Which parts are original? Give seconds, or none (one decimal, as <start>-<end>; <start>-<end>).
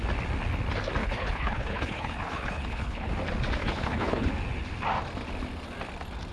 0.0-1.0; 3.1-3.6; 4.3-6.3